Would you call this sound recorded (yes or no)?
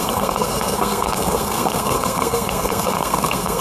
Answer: no